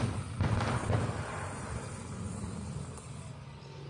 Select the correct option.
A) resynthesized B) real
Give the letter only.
B